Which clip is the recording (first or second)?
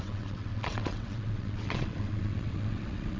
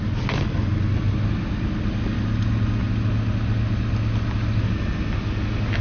second